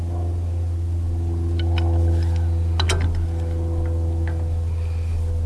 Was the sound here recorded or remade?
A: recorded